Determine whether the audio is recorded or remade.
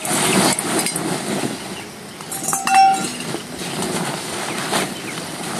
recorded